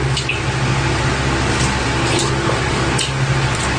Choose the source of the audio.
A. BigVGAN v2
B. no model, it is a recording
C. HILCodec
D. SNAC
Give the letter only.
B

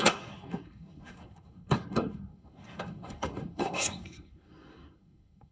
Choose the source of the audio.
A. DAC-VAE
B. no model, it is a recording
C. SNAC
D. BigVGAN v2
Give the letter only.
C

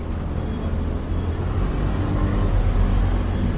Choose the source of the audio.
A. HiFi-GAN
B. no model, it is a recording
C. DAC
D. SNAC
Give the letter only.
B